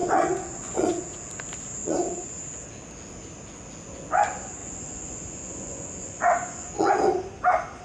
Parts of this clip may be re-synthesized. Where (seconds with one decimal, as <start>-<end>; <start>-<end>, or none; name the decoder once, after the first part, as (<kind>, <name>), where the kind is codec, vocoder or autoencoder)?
0.0-0.9 (vocoder, Vocos); 1.8-2.3; 4.6-6.9